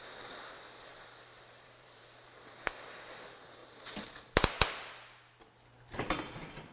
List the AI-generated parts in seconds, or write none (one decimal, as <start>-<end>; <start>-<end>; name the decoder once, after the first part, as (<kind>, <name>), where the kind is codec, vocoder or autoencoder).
0.9-2.0 (vocoder, BigVGAN v2)